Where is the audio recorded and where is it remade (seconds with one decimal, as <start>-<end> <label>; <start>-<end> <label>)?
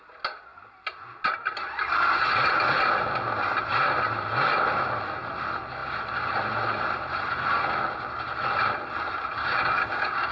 0.0-9.4 recorded; 9.4-10.3 remade